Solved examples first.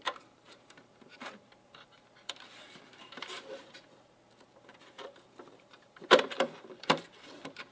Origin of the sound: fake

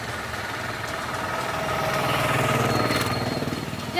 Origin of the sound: real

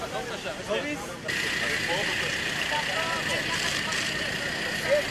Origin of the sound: real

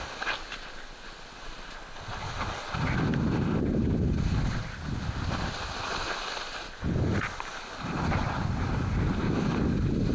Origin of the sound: real